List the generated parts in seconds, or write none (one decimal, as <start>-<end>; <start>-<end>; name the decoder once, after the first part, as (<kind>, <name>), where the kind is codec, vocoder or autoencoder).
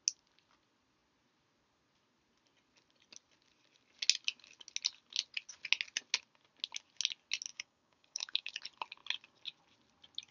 7.5-8.6 (codec, DAC)